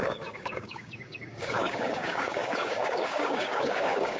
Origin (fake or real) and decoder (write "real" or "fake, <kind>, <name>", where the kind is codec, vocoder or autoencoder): fake, codec, DAC